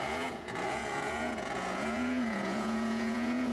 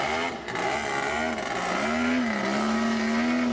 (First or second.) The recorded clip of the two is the second